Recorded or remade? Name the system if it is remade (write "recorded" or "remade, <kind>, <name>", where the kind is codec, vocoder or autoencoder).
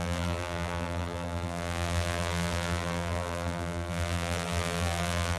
remade, vocoder, BigVGAN v2